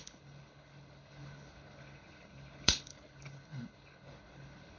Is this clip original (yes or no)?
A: no